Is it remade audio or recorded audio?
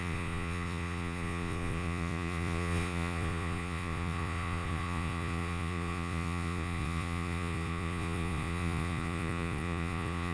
remade